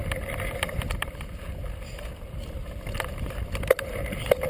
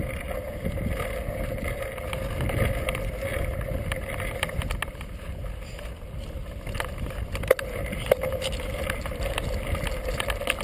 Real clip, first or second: second